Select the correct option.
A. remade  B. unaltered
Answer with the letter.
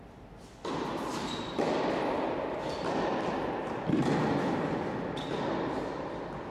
B